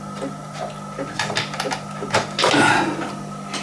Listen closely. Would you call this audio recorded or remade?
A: recorded